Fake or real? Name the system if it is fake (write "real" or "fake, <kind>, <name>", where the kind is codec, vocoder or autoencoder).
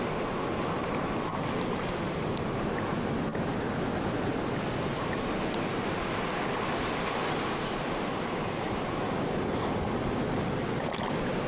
real